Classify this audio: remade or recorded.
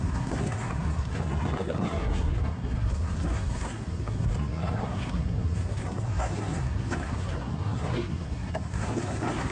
remade